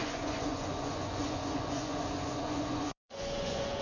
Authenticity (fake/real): fake